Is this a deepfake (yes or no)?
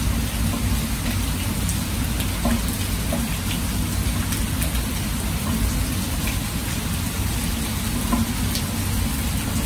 no